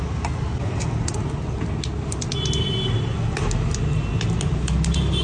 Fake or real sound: real